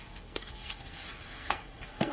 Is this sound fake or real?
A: fake